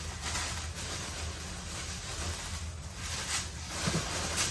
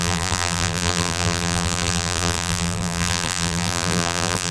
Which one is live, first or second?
first